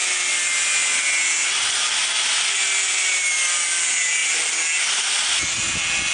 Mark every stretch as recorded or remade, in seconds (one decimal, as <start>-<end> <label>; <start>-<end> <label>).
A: 0.0-6.1 recorded